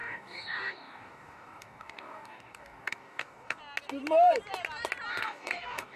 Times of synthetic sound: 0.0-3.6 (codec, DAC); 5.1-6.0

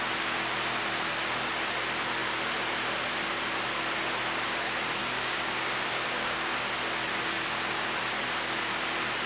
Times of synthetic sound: 5.0-6.5 (codec, DAC)

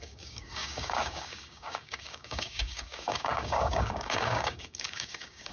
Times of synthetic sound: 0.0-5.5 (codec, DAC)

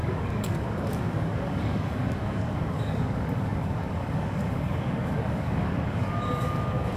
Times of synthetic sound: 0.0-7.0 (codec, DAC)

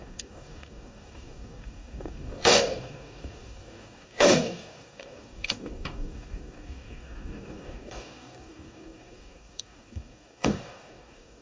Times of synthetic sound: 0.0-11.4 (codec, DAC)

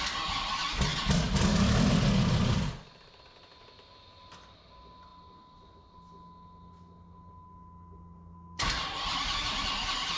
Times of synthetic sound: none

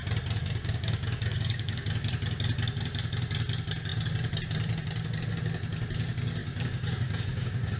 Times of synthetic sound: 0.4-2.1 (codec, DAC); 6.4-7.8

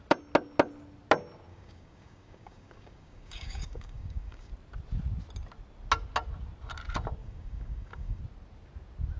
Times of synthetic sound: 1.5-4.5 (codec, DAC); 7.2-8.2